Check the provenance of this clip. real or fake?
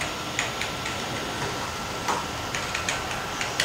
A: real